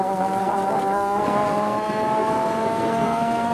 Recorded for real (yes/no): no